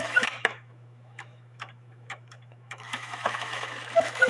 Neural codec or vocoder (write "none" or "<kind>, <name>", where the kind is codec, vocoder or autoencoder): autoencoder, DAC-VAE